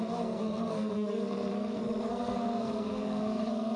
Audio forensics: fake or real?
fake